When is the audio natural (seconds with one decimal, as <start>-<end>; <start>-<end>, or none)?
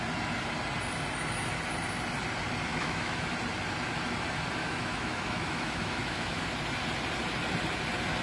0.0-2.7; 3.3-4.6; 6.4-8.2